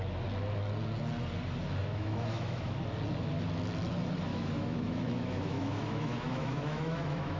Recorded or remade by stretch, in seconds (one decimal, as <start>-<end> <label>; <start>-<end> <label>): 0.0-1.8 recorded; 1.8-2.8 remade; 2.8-4.3 recorded; 4.3-7.4 remade